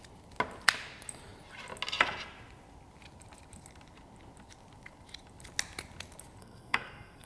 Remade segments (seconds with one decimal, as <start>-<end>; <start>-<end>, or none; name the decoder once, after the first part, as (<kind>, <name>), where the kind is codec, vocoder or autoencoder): 6.4-7.3 (codec, SNAC)